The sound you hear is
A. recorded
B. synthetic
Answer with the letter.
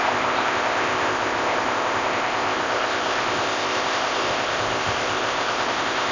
B